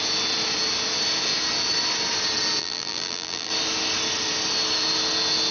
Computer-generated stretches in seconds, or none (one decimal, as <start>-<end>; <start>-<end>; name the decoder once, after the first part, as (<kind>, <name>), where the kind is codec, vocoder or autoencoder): 2.6-3.5 (vocoder, BigVGAN v2)